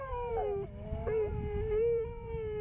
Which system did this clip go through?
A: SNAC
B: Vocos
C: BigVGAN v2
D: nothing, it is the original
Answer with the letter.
C